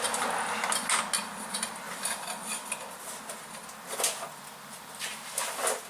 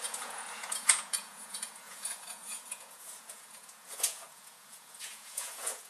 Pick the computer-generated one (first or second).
second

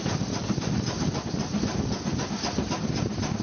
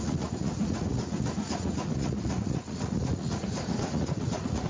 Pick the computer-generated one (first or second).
second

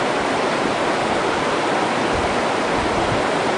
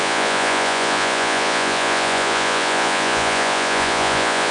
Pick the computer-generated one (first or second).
second